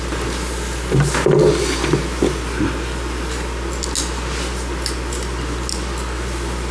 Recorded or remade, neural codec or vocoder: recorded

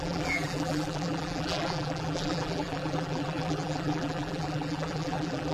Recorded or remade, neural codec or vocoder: remade, vocoder, BigVGAN v2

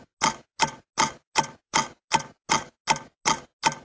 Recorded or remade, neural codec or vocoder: recorded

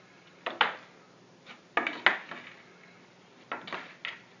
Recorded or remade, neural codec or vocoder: recorded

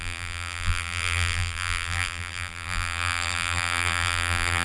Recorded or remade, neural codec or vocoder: remade, vocoder, BigVGAN v2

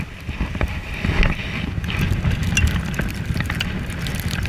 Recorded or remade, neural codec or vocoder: recorded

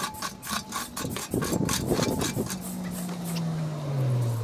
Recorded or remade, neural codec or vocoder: recorded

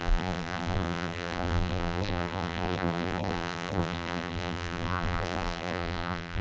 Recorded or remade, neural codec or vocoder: remade, vocoder, BigVGAN v2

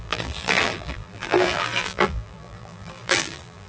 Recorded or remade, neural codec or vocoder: remade, vocoder, BigVGAN v2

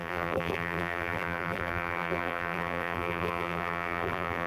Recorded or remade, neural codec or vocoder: remade, vocoder, BigVGAN v2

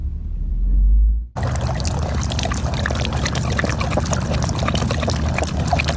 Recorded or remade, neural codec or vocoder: recorded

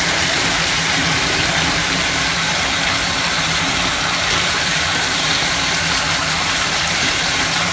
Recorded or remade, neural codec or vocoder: remade, vocoder, BigVGAN v2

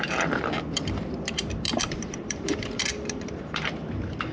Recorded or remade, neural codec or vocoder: remade, vocoder, BigVGAN v2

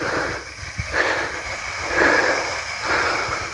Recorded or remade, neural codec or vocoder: recorded